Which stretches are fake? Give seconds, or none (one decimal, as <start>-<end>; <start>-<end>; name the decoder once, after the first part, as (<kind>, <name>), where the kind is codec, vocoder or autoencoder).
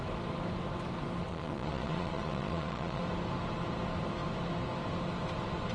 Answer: 1.3-3.0 (vocoder, Vocos)